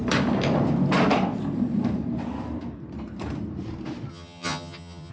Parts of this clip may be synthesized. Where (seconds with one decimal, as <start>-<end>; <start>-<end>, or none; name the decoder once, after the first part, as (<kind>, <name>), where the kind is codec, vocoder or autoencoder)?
4.1-5.1 (vocoder, HiFi-GAN)